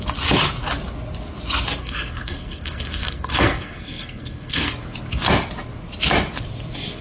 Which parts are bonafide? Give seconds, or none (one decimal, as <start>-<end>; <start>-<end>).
0.0-1.8; 4.7-7.0